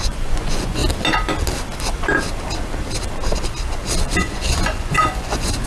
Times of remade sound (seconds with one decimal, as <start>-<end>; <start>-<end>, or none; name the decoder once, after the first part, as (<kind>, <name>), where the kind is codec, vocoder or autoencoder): 0.0-0.8 (vocoder, Vocos); 4.2-5.7